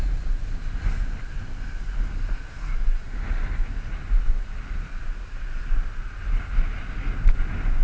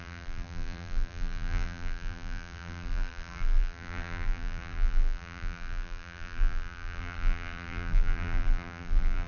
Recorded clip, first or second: first